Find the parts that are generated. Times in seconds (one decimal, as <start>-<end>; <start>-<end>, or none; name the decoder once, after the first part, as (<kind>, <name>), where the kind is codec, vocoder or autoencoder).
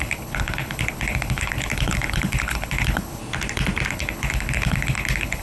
0.0-3.2 (codec, HILCodec); 3.9-5.4